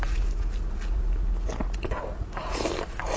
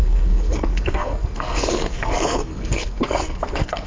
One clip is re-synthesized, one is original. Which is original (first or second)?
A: first